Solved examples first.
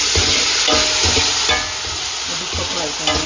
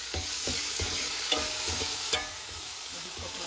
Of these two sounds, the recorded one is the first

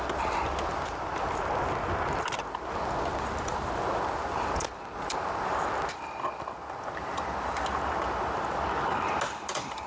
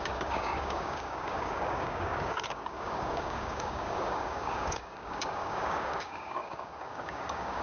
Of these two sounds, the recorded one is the first